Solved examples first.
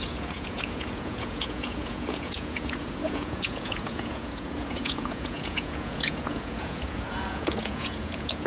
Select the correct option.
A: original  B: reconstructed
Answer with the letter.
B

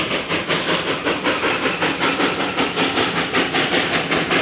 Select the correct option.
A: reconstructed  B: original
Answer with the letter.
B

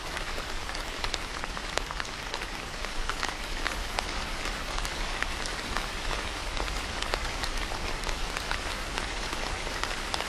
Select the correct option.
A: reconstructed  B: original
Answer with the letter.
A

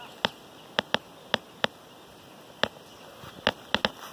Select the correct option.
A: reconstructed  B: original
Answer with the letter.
B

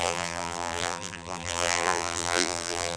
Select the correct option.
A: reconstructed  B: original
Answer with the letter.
A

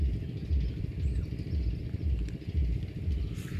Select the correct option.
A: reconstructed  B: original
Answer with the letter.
B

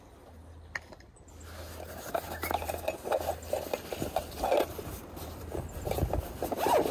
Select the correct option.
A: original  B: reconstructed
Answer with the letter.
A